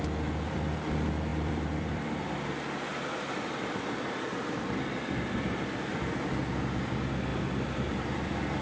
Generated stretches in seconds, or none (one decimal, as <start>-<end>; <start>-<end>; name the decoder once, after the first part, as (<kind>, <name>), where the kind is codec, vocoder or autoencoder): 1.3-2.3 (vocoder, BigVGAN v2); 2.9-6.1; 7.3-8.2

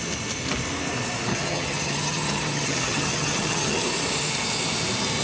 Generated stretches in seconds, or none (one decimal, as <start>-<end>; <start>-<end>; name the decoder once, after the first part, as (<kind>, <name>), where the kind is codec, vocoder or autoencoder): 1.3-3.8 (vocoder, HiFi-GAN)